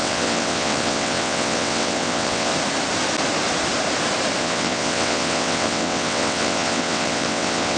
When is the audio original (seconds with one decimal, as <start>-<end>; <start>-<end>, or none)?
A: 2.5-4.4